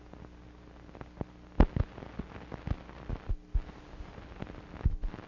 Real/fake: real